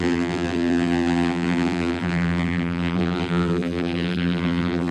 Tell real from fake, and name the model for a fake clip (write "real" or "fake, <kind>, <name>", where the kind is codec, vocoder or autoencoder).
fake, vocoder, BigVGAN v2